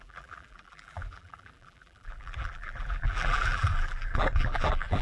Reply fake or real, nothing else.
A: fake